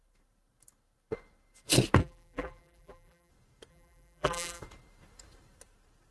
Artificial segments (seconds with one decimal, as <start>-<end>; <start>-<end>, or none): 2.0-3.3; 3.7-4.6